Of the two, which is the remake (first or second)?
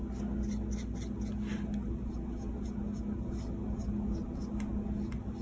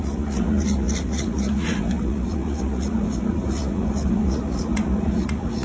second